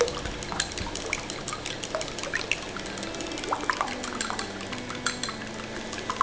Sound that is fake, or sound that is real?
real